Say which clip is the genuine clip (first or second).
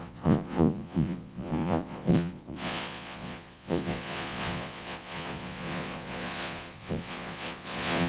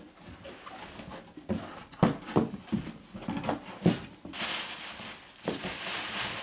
second